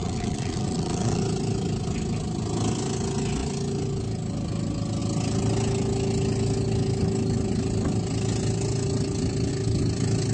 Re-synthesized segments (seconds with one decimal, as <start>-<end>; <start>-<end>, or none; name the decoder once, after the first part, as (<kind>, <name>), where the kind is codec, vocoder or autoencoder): 0.0-1.2 (vocoder, Vocos)